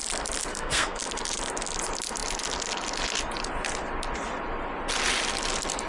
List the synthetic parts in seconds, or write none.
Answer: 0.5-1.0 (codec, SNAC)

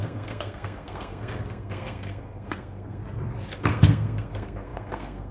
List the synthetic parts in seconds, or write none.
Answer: 0.0-3.0 (codec, SNAC); 3.6-5.3

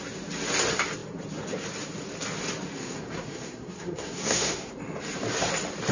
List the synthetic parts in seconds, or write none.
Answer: 2.8-4.7 (codec, SNAC)